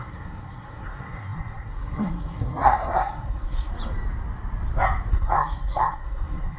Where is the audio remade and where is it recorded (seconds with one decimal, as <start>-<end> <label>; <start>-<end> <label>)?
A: 0.0-3.7 remade; 3.7-5.1 recorded; 5.1-6.6 remade